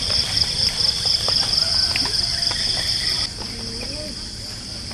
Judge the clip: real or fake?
fake